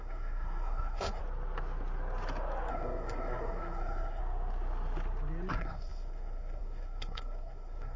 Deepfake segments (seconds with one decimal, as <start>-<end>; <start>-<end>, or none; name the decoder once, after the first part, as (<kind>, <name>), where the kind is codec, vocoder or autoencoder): 0.0-1.2 (codec, SNAC); 2.7-4.2; 5.5-8.0